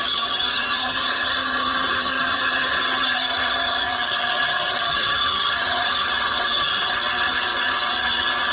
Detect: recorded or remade remade